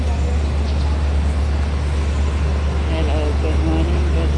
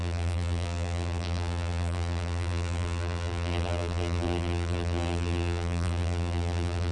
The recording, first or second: first